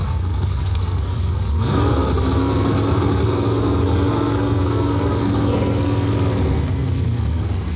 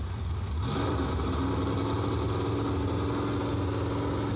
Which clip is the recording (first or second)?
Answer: second